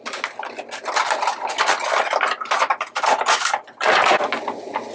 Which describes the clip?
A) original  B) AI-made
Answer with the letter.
A